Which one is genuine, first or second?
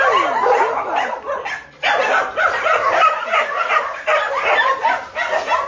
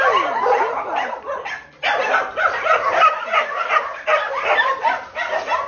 first